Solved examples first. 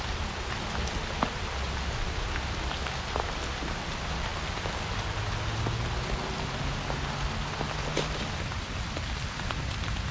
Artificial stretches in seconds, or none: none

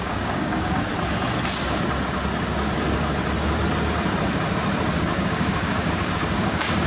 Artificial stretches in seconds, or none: 0.0-0.9 (codec, DAC); 5.0-6.9

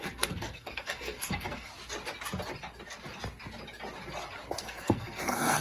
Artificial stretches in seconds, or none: 0.0-1.7 (codec, SNAC); 4.6-5.6

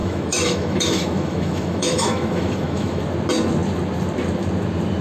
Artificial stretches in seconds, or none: 0.0-3.0 (autoencoder, DAC-VAE)

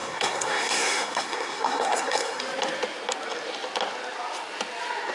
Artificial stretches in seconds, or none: 0.0-2.4 (codec, SNAC)

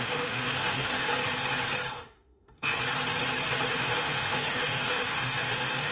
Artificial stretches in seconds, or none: 0.0-1.1 (autoencoder, DAC-VAE); 1.9-2.7; 3.7-5.9

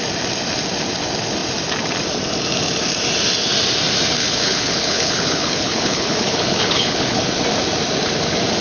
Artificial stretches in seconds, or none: 4.2-7.2 (codec, HILCodec)

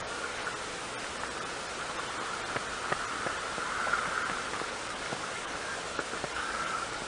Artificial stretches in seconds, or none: 0.0-0.4 (codec, DAC); 4.5-7.1